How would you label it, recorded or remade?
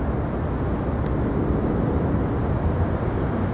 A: recorded